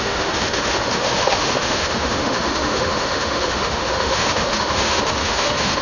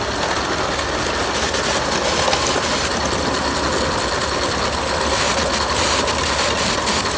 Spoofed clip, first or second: first